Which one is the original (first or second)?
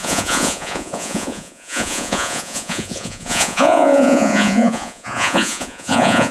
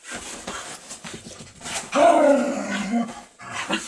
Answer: second